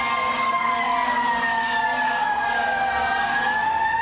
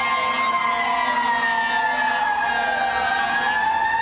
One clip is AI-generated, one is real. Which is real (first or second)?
second